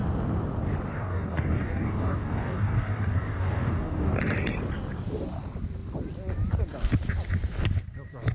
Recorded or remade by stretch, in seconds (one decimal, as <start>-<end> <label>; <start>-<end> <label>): 0.0-0.9 recorded; 0.9-4.2 remade; 4.2-8.3 recorded